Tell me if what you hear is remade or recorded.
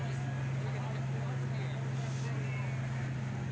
recorded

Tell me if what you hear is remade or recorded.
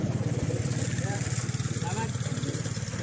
remade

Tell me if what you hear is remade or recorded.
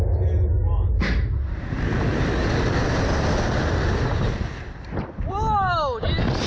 recorded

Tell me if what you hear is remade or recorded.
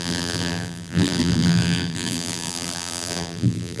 remade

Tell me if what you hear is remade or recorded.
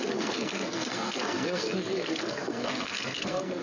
remade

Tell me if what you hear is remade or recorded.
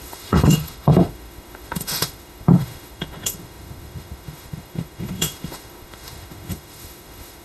remade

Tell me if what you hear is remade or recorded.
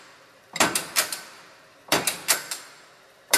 remade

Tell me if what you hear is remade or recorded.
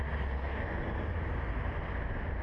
recorded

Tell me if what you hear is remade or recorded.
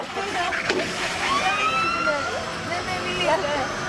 recorded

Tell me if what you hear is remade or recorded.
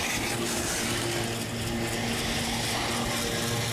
recorded